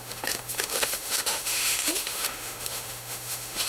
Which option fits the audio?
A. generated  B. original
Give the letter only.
A